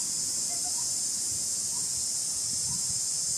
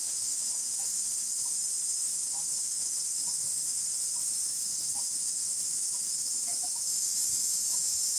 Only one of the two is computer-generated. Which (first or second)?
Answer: second